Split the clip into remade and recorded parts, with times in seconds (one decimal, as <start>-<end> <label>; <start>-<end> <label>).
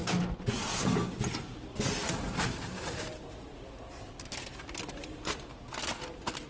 0.0-6.5 recorded